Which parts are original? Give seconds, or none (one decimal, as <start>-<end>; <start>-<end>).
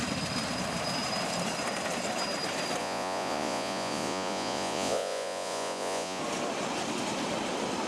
0.0-2.8; 6.2-7.9